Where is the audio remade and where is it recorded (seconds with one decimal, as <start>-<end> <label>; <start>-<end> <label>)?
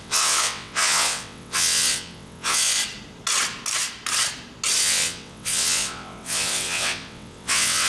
0.0-2.8 remade; 2.8-4.8 recorded; 4.8-7.9 remade